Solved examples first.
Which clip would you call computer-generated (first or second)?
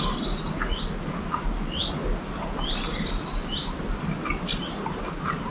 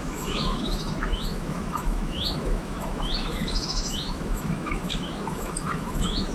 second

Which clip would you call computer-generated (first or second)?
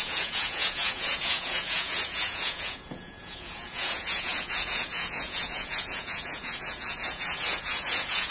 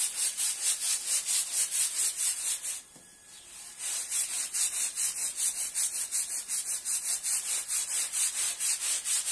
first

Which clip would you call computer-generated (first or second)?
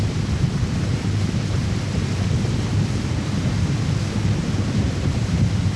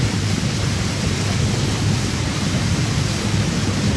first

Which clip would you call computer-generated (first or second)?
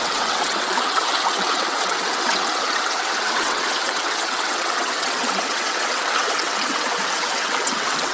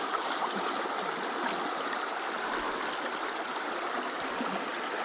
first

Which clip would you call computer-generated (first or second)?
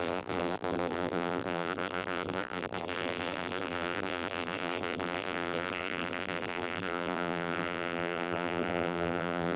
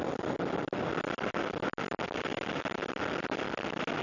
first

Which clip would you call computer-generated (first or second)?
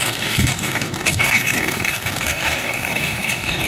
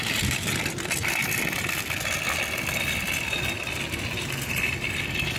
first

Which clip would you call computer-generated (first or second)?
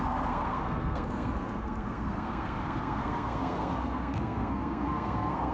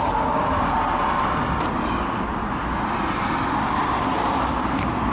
first